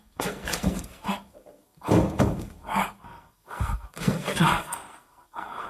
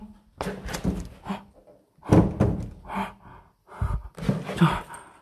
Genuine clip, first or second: second